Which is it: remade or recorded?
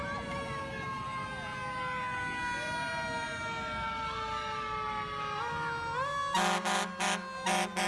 recorded